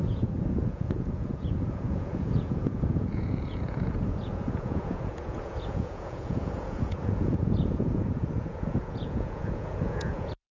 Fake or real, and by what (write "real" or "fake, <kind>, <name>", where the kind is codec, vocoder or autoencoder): fake, vocoder, Vocos